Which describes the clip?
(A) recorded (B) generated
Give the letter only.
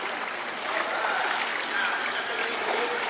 A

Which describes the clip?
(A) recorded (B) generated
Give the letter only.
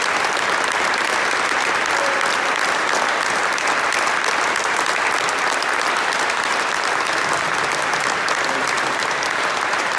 A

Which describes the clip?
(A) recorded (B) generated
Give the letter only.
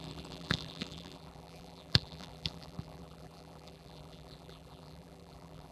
B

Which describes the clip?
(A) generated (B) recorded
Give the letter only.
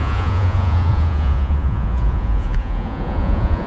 A